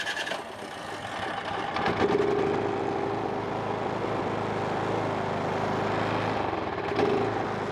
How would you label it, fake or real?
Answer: real